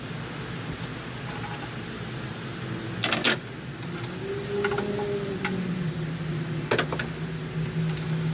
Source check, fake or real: real